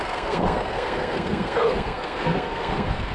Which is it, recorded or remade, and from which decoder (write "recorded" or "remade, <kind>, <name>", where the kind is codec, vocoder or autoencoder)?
remade, codec, SNAC